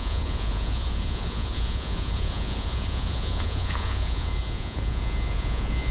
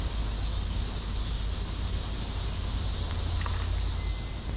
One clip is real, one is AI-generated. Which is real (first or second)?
second